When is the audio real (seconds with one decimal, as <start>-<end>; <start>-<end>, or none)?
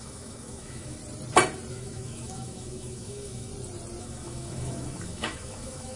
1.0-1.7; 3.5-4.0